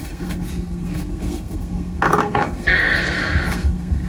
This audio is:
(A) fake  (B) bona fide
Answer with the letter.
A